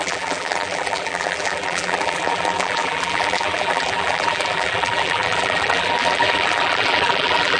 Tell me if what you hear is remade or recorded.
remade